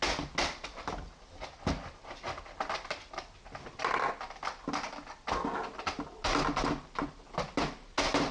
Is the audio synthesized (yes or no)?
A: no